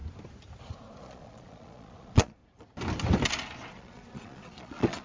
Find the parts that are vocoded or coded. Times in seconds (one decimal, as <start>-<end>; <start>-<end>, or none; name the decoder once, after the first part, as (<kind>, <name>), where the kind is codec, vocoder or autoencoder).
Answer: 1.0-2.4 (vocoder, Vocos); 3.7-5.0